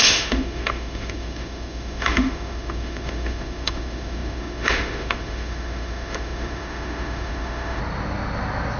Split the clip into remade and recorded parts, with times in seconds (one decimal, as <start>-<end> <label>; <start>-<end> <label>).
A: 0.0-7.8 remade; 7.8-8.8 recorded